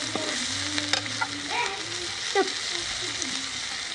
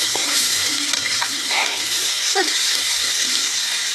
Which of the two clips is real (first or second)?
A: first